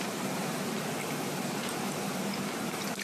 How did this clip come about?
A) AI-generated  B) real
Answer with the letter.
A